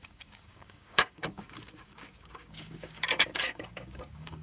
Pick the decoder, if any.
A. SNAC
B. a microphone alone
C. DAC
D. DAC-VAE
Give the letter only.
C